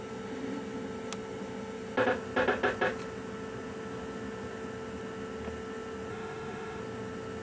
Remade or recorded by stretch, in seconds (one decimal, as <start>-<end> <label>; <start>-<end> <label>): 0.0-6.1 recorded; 6.1-6.8 remade; 6.8-7.4 recorded